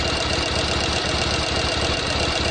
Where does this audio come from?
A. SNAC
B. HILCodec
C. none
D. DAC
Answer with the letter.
C